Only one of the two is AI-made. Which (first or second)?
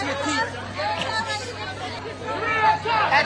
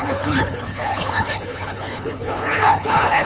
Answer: second